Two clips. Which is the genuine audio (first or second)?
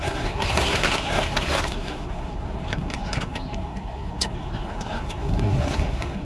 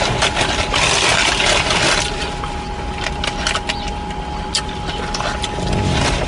second